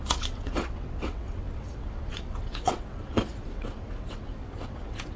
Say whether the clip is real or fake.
fake